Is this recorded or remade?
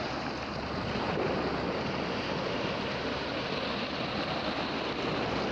recorded